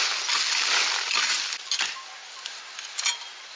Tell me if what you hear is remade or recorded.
recorded